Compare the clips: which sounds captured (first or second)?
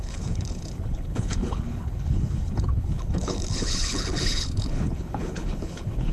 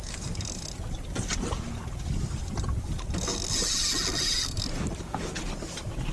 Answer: second